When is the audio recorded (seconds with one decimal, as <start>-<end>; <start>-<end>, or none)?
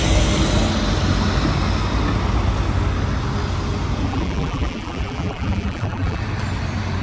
0.0-4.1; 6.2-7.0